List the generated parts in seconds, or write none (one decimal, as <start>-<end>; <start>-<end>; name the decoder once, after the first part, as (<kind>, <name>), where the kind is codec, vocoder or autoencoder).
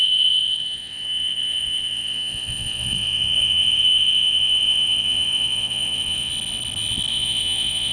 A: 0.0-6.3 (vocoder, Vocos); 7.1-7.9